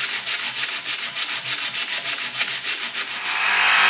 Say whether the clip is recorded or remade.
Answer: recorded